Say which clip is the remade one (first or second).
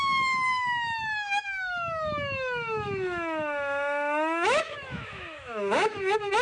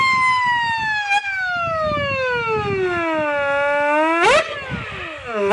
first